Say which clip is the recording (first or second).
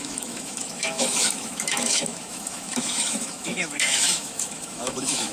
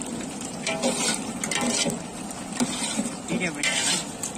second